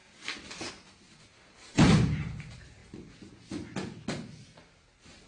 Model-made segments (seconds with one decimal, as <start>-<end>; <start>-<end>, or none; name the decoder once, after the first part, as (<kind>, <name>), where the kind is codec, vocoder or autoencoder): none

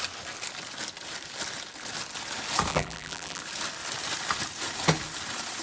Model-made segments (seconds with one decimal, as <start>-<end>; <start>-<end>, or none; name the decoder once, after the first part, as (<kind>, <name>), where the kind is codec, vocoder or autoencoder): 2.7-3.4 (vocoder, BigVGAN v2)